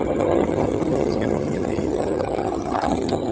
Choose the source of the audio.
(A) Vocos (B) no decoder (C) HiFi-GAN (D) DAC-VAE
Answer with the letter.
C